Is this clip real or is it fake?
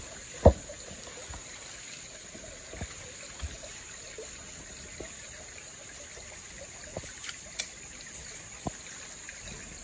real